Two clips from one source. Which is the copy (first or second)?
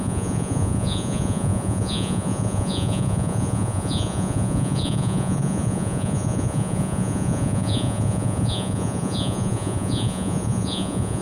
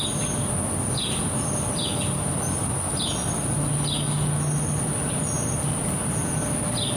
first